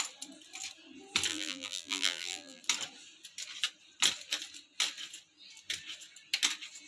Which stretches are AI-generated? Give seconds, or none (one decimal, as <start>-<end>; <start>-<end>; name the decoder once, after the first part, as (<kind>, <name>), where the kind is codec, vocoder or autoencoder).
1.3-2.6 (vocoder, BigVGAN v2)